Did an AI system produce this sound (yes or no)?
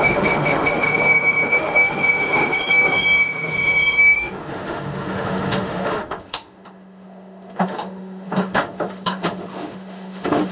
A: yes